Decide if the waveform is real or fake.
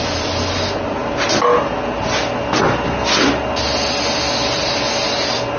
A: real